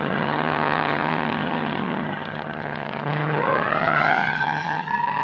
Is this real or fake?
fake